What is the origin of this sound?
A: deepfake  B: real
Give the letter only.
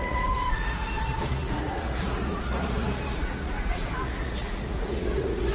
A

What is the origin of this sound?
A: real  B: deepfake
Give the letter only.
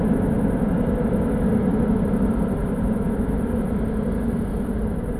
A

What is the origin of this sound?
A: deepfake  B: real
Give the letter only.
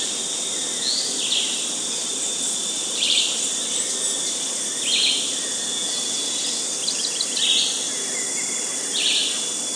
B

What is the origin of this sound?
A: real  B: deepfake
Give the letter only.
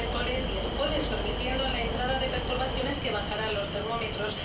A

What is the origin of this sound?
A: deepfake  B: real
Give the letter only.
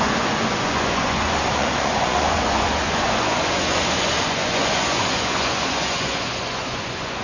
A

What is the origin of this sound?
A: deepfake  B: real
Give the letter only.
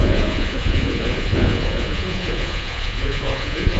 A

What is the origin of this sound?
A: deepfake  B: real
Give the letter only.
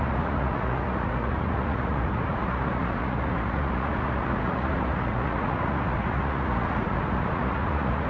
A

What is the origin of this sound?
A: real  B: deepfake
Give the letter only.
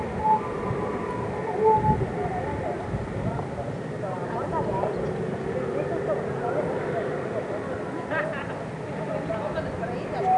A